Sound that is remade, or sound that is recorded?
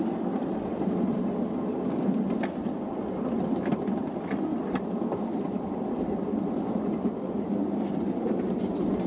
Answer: recorded